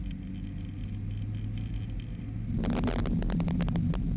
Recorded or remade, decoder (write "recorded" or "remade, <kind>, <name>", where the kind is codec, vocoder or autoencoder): recorded